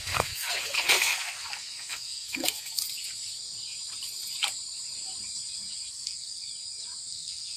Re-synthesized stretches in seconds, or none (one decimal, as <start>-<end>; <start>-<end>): 0.0-2.8; 5.9-6.5; 7.1-7.6